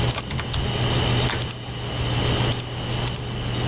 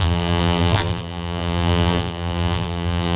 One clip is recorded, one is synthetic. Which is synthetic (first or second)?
second